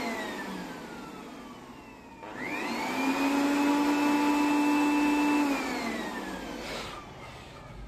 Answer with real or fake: real